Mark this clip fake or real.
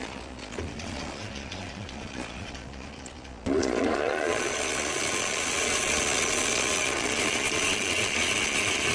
fake